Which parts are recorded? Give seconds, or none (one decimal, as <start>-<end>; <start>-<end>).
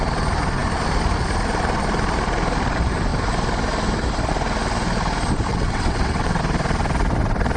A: 0.0-5.5; 6.4-7.6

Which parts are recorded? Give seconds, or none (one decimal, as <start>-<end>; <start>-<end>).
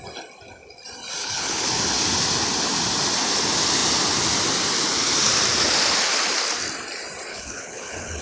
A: 0.0-1.2; 1.7-7.3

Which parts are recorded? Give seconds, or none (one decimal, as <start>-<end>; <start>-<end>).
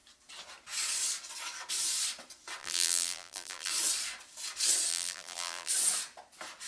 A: 0.0-2.6; 3.7-4.9; 5.7-6.7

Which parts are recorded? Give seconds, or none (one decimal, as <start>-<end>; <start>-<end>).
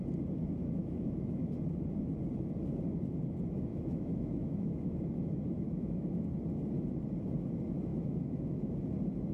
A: 0.0-0.6; 1.5-3.7; 6.3-7.9; 8.7-9.3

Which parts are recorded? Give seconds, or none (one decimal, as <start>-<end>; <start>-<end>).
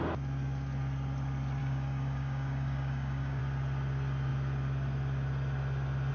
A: 0.0-1.6; 3.4-6.1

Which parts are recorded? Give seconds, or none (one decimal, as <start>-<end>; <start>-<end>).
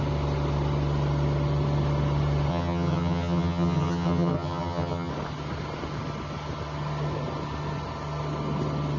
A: 0.0-2.5; 5.1-9.0